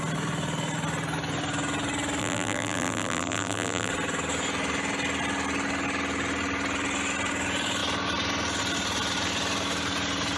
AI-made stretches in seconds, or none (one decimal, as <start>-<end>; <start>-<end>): 2.2-3.9